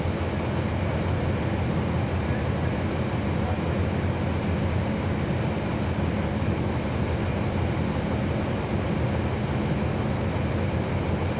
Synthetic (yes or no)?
no